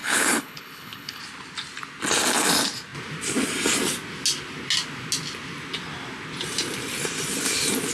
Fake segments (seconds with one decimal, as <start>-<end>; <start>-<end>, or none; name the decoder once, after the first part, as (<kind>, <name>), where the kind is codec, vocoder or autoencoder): 0.0-1.2 (codec, HILCodec)

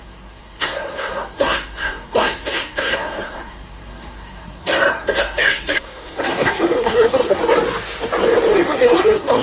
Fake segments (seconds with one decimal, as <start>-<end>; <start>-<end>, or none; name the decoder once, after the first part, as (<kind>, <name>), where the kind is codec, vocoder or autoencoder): 0.0-7.4 (codec, SNAC); 8.5-9.4